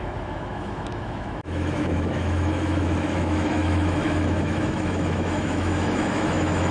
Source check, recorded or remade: remade